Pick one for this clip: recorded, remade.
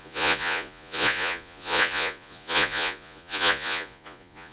remade